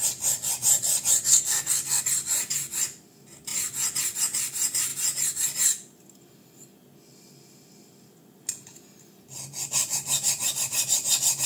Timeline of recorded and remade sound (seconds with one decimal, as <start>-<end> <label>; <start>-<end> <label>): 0.0-1.3 recorded; 1.3-2.0 remade; 2.0-11.5 recorded